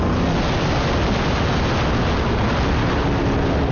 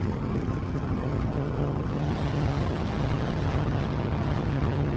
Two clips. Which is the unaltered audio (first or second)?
first